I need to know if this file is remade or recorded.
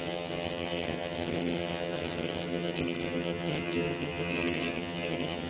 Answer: remade